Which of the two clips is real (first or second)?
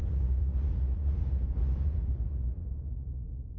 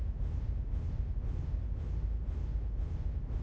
second